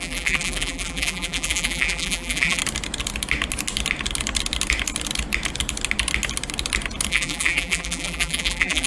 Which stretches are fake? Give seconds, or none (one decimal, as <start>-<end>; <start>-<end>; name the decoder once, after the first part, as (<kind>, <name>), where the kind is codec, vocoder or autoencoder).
0.0-2.6 (vocoder, BigVGAN v2); 7.1-8.9